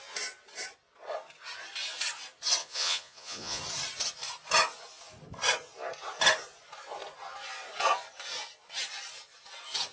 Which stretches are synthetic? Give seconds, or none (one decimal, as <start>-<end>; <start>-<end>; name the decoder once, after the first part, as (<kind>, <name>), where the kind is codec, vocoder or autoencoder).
2.6-3.6 (vocoder, Vocos)